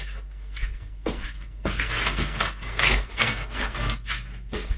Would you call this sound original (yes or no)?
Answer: no